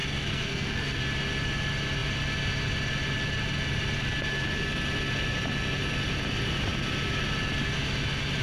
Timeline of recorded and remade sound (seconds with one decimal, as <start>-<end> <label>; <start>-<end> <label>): 0.0-1.0 remade; 1.0-8.4 recorded